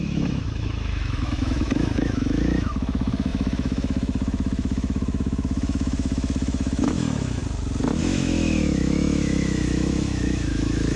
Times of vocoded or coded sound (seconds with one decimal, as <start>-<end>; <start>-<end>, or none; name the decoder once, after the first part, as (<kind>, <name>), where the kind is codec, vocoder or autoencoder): 0.0-7.4 (autoencoder, DAC-VAE); 8.0-11.0